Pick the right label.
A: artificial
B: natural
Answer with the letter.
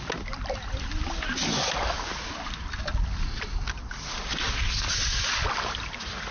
B